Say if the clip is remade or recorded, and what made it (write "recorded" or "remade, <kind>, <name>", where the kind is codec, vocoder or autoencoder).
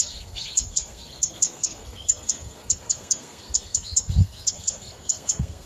remade, codec, SNAC